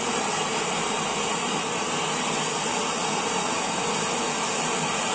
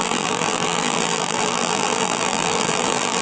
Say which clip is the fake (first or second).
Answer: second